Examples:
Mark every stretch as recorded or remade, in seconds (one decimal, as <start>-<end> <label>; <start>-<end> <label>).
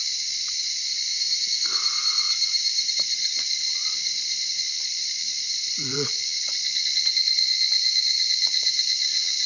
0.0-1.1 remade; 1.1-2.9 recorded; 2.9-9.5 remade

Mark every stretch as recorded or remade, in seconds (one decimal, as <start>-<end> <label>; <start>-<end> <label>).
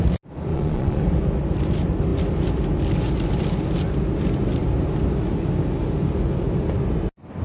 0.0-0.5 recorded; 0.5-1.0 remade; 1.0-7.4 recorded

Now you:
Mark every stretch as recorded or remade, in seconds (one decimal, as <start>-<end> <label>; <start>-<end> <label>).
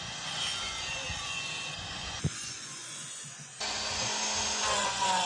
0.0-5.3 remade